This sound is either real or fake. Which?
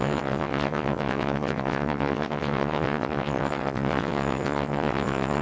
fake